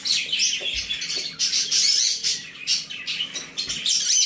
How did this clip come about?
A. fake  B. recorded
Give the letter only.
B